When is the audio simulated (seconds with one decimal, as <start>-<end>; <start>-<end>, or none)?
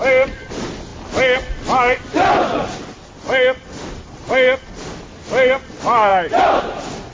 none